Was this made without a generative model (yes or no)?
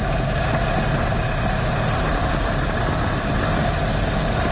yes